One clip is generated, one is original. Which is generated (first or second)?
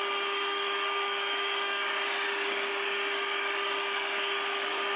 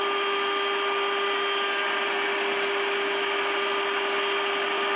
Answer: first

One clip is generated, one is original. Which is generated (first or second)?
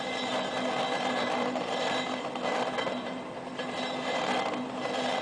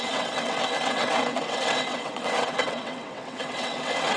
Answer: second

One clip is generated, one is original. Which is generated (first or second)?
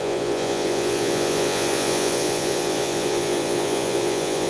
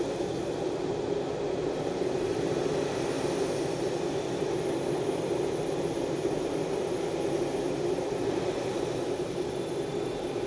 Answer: first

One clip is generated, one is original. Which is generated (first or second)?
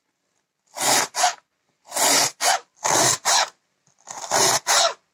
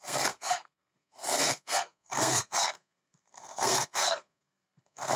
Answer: second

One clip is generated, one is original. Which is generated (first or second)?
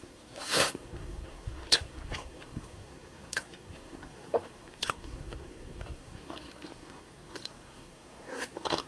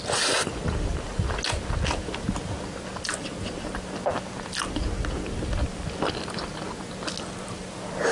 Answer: first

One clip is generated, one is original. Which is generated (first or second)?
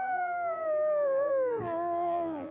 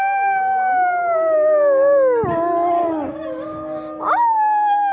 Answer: first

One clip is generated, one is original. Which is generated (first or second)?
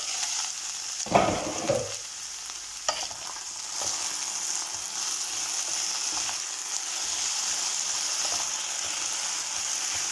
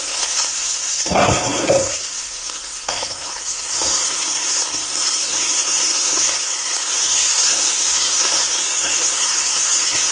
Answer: second